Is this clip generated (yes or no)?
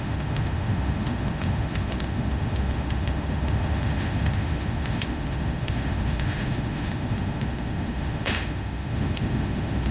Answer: yes